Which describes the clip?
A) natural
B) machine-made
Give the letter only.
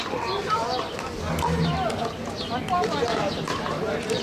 A